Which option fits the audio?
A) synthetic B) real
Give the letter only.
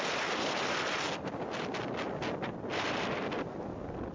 B